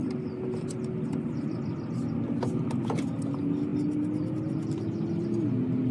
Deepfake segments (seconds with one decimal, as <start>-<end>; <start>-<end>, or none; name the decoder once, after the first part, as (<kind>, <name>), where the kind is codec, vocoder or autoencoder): 0.0-0.7 (vocoder, BigVGAN v2)